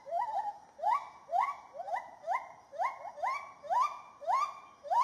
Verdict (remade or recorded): recorded